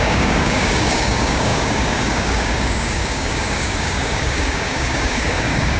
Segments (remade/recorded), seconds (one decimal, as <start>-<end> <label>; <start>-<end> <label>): 0.0-5.8 remade